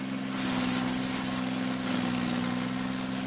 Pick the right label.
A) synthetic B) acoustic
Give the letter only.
B